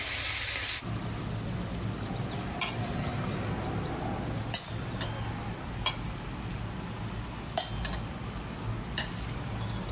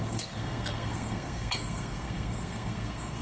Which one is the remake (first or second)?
second